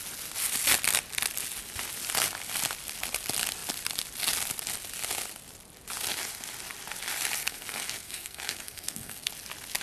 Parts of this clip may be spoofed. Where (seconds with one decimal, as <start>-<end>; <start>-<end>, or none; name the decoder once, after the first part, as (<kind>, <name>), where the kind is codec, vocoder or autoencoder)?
7.4-9.3 (codec, SNAC)